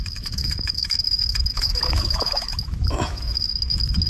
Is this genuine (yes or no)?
no